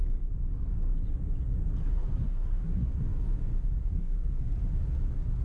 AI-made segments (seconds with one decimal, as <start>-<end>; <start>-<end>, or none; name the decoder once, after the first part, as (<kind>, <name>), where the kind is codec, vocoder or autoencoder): 1.9-2.9 (codec, SNAC); 3.8-4.4